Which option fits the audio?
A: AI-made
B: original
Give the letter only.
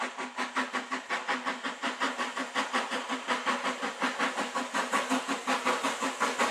B